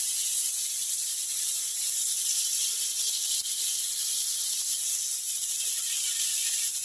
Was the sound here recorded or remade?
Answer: recorded